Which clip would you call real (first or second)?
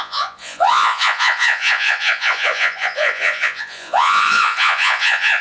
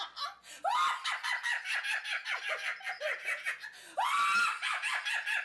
second